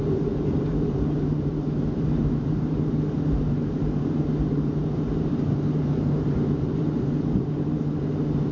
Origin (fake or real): fake